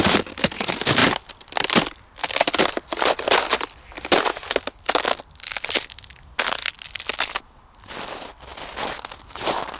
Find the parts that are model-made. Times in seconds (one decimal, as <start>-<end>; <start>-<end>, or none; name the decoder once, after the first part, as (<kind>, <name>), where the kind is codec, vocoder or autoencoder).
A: none